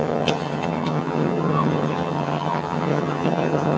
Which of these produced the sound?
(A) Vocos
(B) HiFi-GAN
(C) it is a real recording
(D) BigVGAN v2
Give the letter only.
B